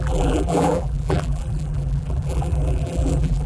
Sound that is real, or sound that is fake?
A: fake